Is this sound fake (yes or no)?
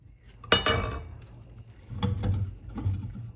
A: no